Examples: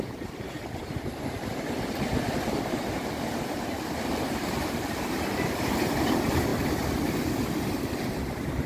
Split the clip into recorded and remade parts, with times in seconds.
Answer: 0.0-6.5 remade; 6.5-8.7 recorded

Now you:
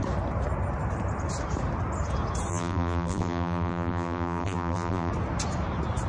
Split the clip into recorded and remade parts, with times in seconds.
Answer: 0.0-2.5 recorded; 2.5-5.1 remade; 5.1-6.1 recorded

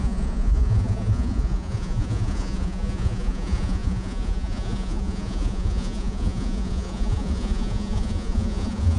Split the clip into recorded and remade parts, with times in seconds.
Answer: 0.0-9.0 remade

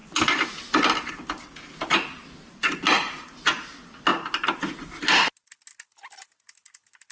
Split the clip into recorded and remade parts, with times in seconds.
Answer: 0.0-7.1 recorded

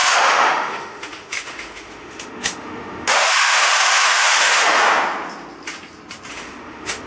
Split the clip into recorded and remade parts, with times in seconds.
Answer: 0.0-4.8 remade; 4.8-6.3 recorded; 6.3-7.1 remade

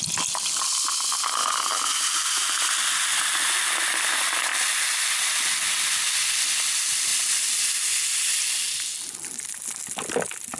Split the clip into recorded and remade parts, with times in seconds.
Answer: 0.0-10.6 recorded

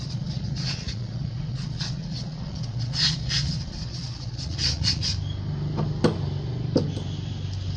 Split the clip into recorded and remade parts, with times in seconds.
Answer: 0.0-5.1 remade; 5.1-7.8 recorded